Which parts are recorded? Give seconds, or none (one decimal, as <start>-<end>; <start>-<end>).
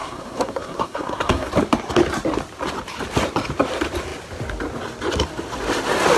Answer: 1.5-6.2